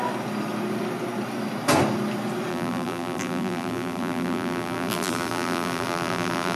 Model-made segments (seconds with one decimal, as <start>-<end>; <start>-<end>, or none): 2.5-6.6